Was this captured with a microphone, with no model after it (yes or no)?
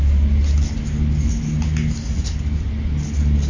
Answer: yes